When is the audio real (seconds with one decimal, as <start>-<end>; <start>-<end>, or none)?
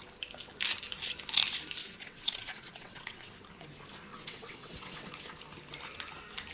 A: 0.0-1.8; 3.3-4.1; 5.1-6.5